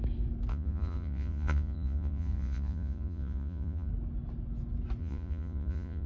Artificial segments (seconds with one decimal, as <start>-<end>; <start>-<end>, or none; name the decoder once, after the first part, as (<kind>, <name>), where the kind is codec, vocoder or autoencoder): 0.5-3.9 (vocoder, Vocos); 5.0-6.1